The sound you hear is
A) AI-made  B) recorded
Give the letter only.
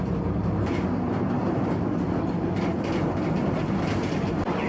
B